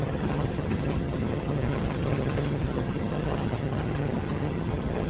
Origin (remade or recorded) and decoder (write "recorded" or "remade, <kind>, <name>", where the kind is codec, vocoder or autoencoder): remade, vocoder, HiFi-GAN